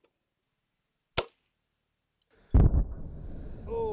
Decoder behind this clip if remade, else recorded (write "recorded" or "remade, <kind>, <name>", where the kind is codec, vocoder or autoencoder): recorded